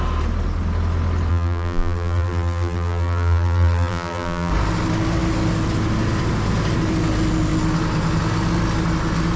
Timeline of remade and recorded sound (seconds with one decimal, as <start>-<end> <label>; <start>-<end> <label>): 0.0-1.3 recorded; 1.3-4.5 remade; 4.5-9.4 recorded